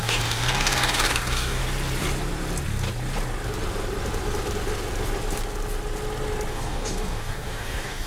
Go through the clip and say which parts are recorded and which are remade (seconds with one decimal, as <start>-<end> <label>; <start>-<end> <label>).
0.0-1.6 remade; 1.6-6.5 recorded; 6.5-8.1 remade